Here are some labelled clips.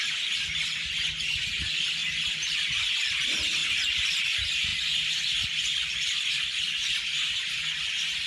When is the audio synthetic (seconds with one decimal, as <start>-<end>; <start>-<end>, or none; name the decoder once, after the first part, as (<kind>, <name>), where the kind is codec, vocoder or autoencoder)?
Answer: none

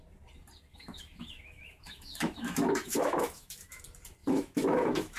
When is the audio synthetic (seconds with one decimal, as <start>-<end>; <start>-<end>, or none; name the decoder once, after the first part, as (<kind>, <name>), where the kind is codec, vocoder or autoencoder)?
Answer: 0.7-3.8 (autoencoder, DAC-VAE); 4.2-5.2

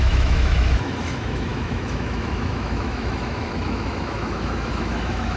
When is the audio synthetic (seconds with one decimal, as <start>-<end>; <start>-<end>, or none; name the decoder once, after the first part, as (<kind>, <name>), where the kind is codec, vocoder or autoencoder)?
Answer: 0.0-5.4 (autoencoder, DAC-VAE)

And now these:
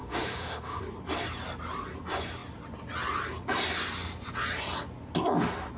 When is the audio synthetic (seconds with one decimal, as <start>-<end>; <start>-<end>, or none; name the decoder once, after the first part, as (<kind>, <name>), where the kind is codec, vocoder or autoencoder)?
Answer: 0.0-0.8 (autoencoder, DAC-VAE)

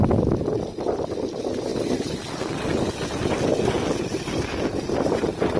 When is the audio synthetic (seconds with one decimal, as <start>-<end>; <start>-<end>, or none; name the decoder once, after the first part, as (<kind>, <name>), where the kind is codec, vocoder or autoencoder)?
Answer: none

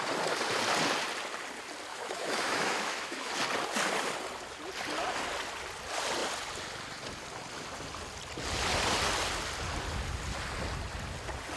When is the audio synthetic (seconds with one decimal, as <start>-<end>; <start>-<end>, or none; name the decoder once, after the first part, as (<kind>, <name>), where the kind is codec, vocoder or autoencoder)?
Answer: 1.9-3.3 (autoencoder, DAC-VAE)